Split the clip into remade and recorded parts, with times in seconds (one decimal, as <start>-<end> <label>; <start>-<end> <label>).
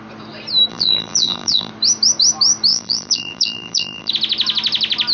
0.0-0.7 recorded; 0.7-1.7 remade; 1.7-2.7 recorded; 2.7-4.1 remade; 4.1-5.1 recorded